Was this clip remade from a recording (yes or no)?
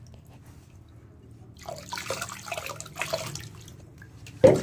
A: no